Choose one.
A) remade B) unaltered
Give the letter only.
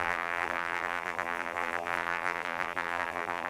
A